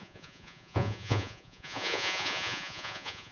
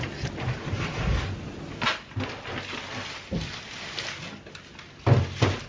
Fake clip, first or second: first